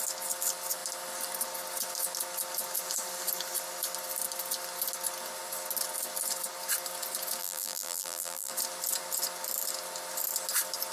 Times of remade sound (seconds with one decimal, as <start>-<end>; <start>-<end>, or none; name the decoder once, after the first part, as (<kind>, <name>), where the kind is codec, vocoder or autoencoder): 7.4-8.5 (vocoder, BigVGAN v2)